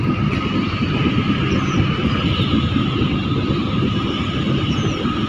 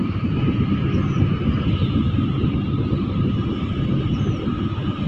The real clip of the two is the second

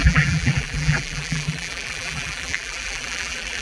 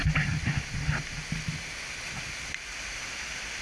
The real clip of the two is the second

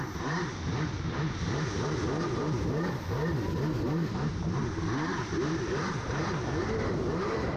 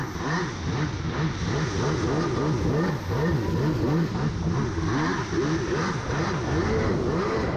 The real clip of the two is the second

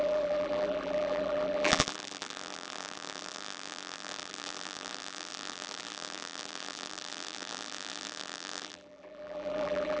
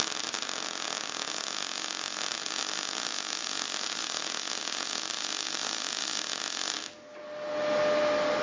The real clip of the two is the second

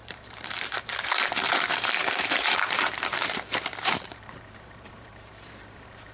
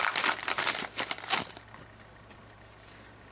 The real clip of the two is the second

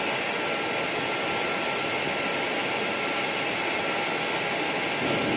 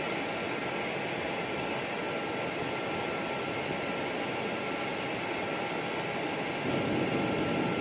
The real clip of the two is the first